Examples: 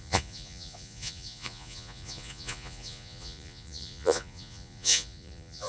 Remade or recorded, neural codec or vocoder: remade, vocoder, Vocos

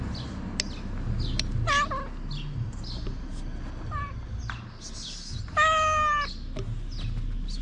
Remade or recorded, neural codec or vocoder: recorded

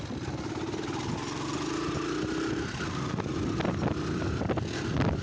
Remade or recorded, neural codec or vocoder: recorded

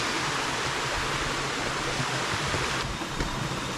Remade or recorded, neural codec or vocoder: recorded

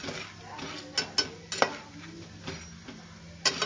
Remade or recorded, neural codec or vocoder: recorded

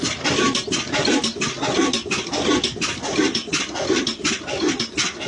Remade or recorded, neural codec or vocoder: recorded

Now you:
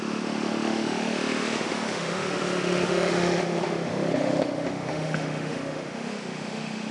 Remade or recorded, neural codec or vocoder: remade, autoencoder, DAC-VAE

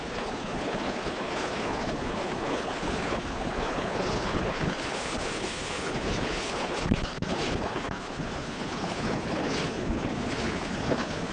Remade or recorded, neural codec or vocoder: remade, codec, HILCodec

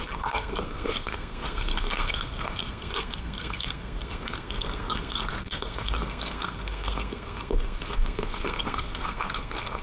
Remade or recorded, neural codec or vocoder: remade, codec, SNAC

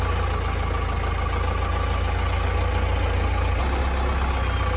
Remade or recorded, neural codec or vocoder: recorded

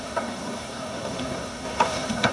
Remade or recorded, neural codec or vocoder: remade, codec, SNAC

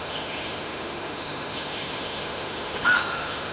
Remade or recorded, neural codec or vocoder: remade, autoencoder, DAC-VAE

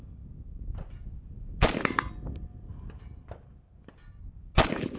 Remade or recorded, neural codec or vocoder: recorded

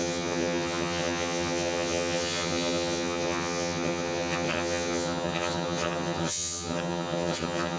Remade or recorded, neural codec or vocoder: remade, vocoder, HiFi-GAN